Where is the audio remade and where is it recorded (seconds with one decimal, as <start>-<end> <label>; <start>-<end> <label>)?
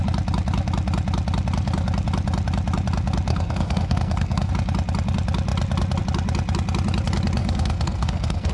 0.0-3.3 recorded; 3.3-4.5 remade; 4.5-7.4 recorded; 7.4-8.5 remade